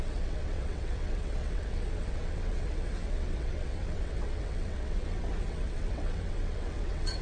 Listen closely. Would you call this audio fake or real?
fake